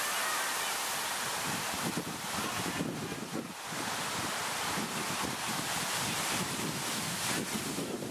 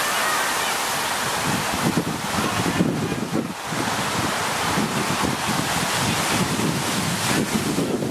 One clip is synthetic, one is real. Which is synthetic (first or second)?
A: first